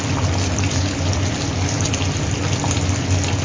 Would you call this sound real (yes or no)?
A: yes